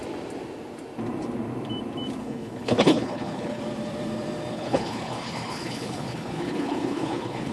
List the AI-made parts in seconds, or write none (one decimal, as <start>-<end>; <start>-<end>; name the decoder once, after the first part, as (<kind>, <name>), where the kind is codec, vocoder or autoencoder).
2.2-3.6 (codec, HILCodec); 4.5-7.5